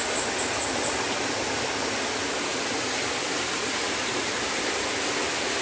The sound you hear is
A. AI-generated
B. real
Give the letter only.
B